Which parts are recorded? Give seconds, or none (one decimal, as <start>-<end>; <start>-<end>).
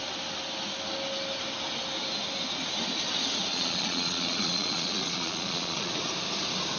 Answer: 0.0-3.5; 6.0-6.8